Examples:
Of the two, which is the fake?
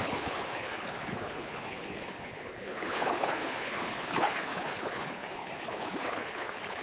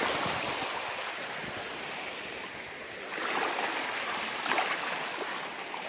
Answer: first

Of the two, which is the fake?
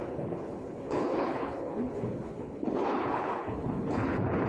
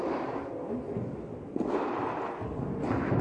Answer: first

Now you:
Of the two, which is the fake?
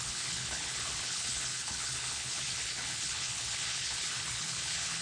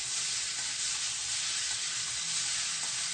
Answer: first